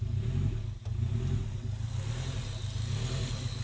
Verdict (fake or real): real